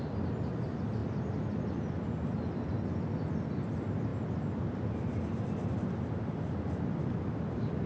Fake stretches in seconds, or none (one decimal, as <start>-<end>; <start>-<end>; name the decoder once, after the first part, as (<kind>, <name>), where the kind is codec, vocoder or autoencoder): none